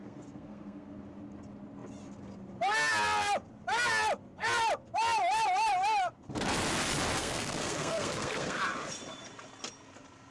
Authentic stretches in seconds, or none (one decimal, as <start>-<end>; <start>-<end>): 1.0-7.2; 8.6-10.3